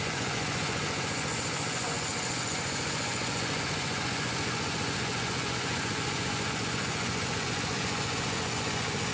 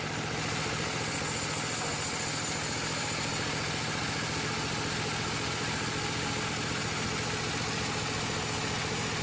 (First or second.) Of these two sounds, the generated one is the first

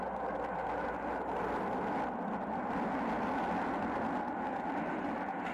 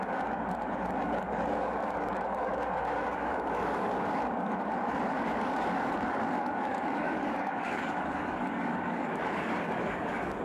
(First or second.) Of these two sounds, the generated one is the second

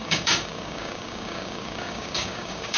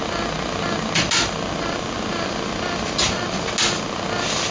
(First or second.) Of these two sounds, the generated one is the first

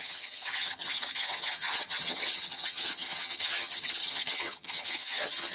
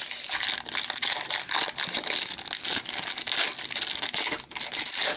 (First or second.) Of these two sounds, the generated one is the first